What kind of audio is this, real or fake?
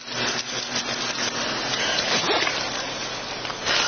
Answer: real